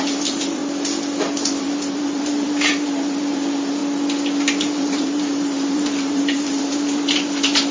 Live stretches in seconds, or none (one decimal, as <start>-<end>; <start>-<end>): 0.6-1.5; 3.8-4.6